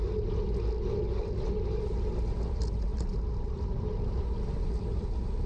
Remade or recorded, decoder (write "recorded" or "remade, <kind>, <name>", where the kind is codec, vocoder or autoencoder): recorded